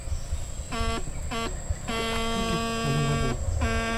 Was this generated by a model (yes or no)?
no